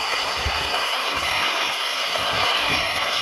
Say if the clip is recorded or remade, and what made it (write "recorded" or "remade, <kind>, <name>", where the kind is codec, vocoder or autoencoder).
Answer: remade, codec, SNAC